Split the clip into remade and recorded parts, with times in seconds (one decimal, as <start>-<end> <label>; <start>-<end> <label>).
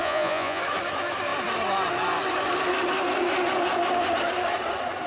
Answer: 0.0-0.6 remade; 0.6-5.1 recorded